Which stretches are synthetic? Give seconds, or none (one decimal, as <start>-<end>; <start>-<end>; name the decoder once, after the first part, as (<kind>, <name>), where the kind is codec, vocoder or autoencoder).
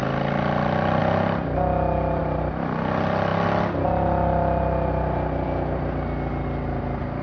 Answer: none